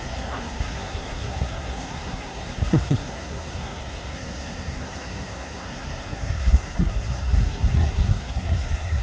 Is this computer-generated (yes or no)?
yes